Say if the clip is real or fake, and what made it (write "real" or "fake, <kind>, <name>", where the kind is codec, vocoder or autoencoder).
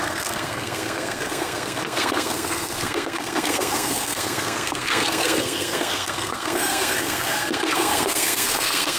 fake, codec, SNAC